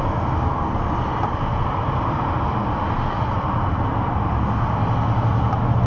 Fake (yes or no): no